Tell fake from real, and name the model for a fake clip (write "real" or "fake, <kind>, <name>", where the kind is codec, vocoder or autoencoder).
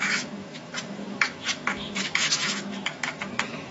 fake, autoencoder, DAC-VAE